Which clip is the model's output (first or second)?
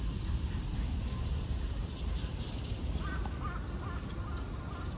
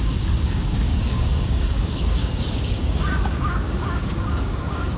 second